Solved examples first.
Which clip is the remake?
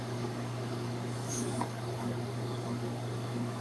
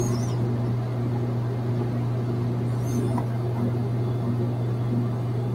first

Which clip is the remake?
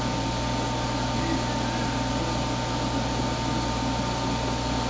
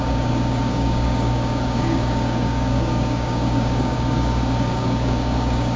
second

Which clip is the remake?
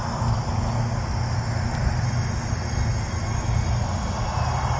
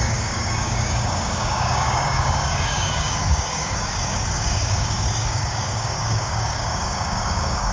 second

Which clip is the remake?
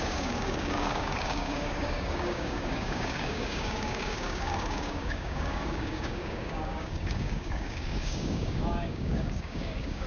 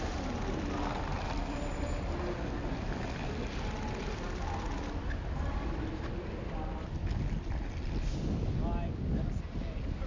first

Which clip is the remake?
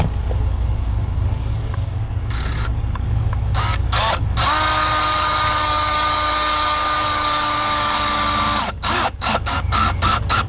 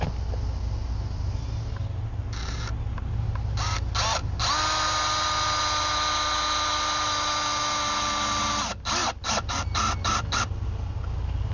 first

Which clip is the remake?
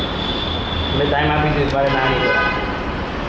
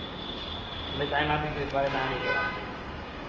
second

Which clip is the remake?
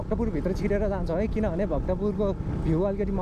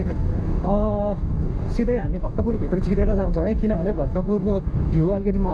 second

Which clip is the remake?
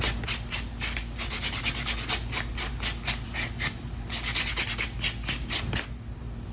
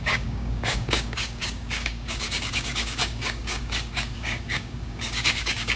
second